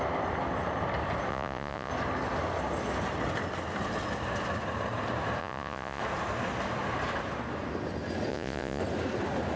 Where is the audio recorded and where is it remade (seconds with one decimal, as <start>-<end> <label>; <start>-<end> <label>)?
0.0-1.3 recorded; 1.3-1.9 remade; 1.9-5.4 recorded; 5.4-6.0 remade; 6.0-8.3 recorded; 8.3-8.8 remade; 8.8-9.6 recorded